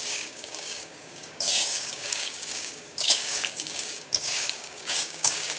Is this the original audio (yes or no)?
no